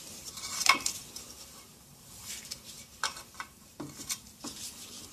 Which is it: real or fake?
fake